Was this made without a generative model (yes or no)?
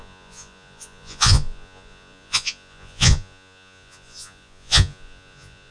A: no